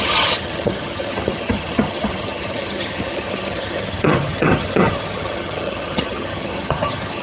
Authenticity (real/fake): fake